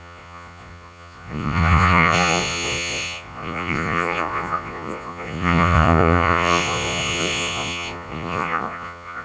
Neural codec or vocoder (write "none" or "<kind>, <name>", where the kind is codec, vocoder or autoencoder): vocoder, Vocos